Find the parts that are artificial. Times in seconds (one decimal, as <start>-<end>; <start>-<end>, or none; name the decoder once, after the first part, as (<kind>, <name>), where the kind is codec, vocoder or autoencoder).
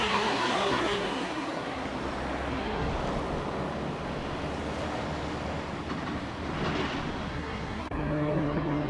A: 0.0-1.9 (codec, SNAC); 2.5-2.9; 7.3-8.9